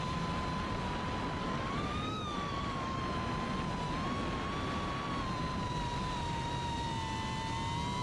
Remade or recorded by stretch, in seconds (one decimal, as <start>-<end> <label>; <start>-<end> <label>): 0.0-1.4 recorded; 1.4-3.0 remade; 3.0-8.0 recorded